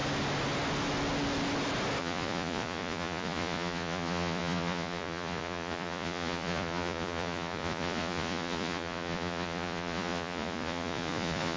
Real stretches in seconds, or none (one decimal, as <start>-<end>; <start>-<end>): 0.0-2.0